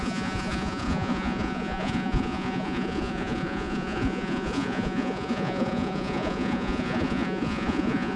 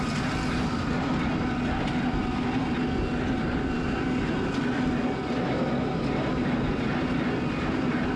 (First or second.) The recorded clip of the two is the second